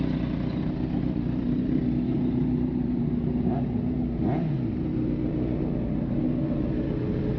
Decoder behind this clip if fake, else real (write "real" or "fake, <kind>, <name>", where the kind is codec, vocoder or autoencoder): real